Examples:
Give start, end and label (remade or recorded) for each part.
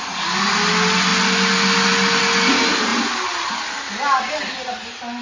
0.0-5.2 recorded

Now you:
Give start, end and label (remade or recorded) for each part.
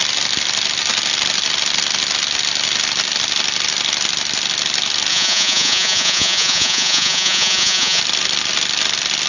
0.0-5.1 recorded; 5.1-8.0 remade; 8.0-9.3 recorded